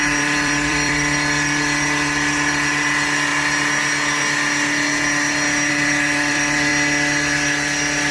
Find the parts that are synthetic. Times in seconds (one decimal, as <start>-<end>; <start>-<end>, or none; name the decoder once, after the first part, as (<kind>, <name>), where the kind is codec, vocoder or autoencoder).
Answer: 0.0-3.3 (vocoder, BigVGAN v2); 5.7-6.7